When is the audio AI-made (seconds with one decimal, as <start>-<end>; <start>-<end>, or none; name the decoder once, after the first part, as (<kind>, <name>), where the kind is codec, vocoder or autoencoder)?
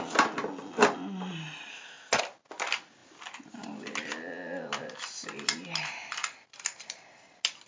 1.7-2.2 (codec, ZipCodec)